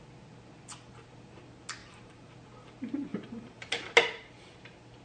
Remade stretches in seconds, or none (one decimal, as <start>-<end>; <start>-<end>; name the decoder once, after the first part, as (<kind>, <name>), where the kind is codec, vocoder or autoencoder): 1.8-2.3 (vocoder, BigVGAN v2); 3.1-3.7